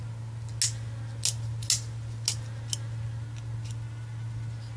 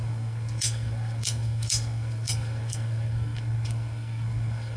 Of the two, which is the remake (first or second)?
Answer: second